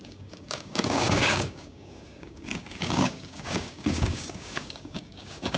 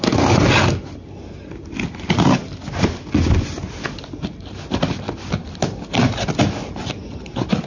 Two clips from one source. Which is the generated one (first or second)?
first